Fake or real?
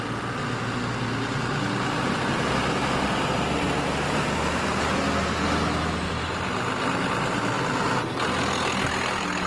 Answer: real